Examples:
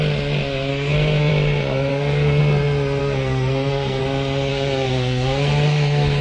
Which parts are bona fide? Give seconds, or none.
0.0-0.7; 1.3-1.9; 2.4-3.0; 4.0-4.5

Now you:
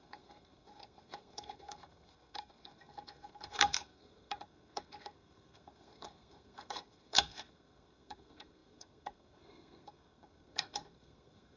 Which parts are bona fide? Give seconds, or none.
none